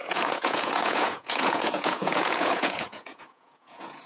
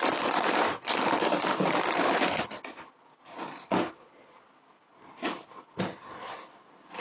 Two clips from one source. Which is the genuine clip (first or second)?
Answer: second